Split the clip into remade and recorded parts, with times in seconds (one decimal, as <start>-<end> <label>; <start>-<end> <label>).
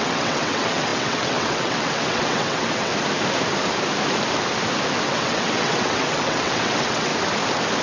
0.0-2.9 remade; 2.9-5.0 recorded; 5.0-7.1 remade; 7.1-7.8 recorded